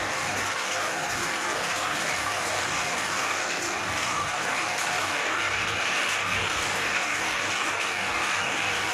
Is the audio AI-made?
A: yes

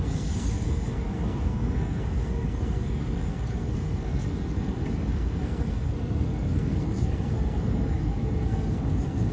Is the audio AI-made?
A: yes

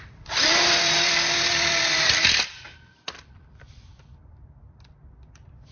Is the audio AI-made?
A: yes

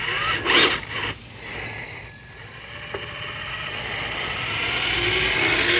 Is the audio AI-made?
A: no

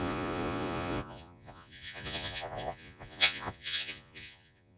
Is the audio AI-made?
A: yes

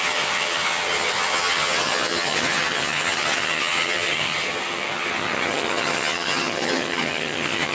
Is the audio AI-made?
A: yes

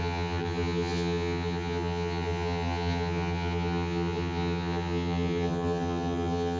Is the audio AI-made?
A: yes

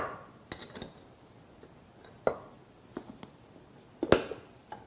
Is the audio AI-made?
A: no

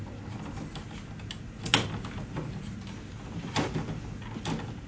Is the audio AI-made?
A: no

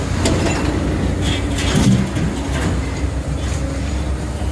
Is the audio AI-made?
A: no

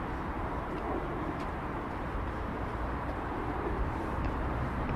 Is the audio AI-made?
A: yes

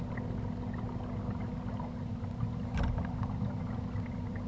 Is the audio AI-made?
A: no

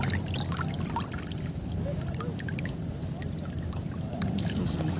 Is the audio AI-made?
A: no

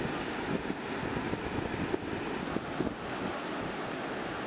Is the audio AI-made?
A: no